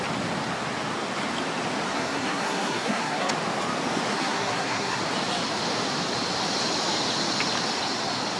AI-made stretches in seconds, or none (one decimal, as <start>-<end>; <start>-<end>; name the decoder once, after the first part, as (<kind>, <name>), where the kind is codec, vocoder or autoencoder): 1.9-3.3 (codec, SNAC); 4.1-5.0